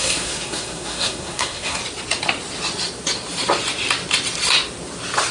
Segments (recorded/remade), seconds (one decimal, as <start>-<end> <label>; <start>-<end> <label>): 0.0-1.8 remade; 1.8-5.3 recorded